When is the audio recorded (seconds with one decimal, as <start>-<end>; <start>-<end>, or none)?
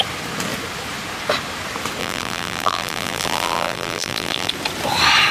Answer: 0.0-2.0; 4.5-5.3